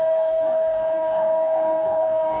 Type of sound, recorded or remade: remade